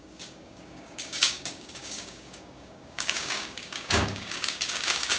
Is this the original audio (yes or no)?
no